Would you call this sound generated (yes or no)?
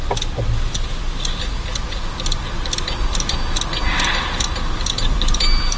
no